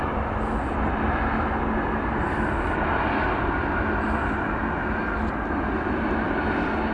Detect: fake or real real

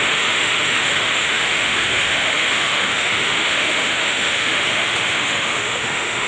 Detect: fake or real fake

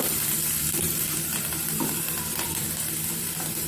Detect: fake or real fake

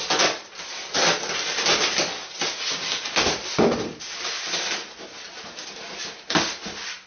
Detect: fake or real real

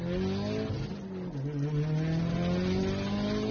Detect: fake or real real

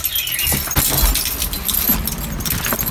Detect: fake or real real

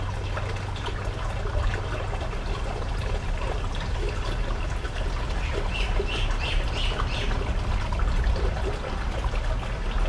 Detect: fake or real real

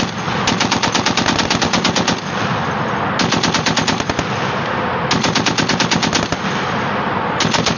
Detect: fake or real real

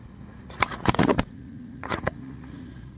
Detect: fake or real fake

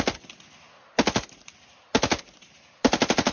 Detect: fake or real real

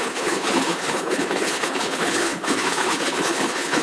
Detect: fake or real fake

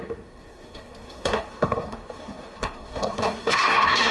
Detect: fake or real fake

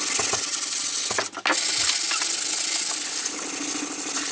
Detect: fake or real real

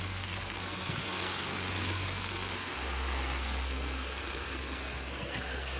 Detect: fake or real fake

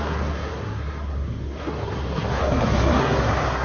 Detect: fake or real fake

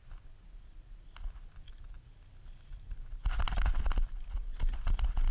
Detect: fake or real real